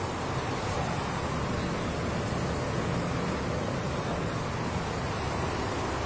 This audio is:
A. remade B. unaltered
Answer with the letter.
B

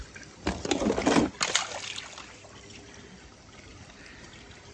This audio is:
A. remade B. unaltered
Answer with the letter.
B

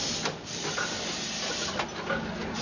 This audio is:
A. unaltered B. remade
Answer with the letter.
A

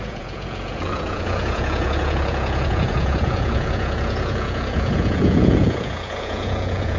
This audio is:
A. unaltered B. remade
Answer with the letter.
B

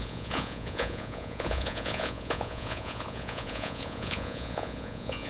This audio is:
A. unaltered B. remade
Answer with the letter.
B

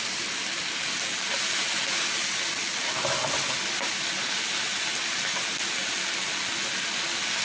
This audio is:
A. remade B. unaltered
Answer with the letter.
B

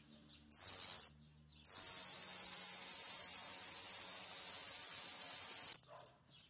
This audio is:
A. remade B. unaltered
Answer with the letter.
B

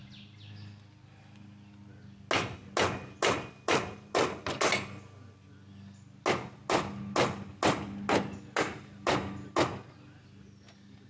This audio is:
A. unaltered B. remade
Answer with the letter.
A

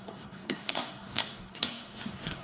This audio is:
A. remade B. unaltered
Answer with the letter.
A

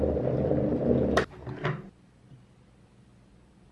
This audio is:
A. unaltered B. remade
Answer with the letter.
A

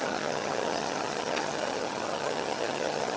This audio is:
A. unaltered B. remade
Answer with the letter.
B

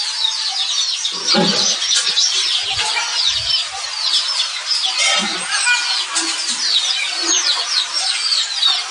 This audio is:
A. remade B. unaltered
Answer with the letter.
B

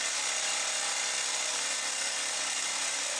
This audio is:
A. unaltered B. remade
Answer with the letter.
A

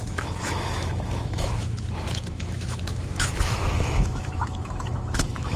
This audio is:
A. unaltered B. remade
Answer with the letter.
B